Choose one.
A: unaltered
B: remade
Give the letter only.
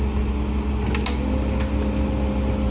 A